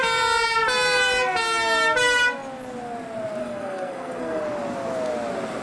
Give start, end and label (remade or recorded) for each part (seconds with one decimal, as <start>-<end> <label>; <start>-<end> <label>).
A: 0.0-3.4 recorded; 3.4-4.4 remade; 4.4-5.6 recorded